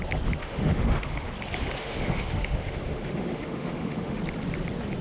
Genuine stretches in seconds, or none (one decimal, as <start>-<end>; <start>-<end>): 0.0-0.4; 1.3-1.8; 4.2-5.0